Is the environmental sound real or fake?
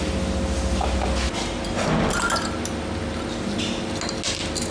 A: real